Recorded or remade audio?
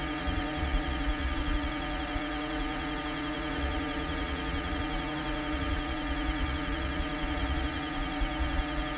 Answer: remade